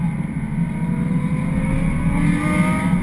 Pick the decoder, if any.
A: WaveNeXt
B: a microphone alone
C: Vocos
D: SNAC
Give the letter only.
B